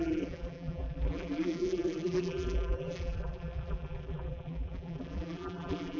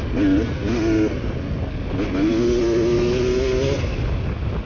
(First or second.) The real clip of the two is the second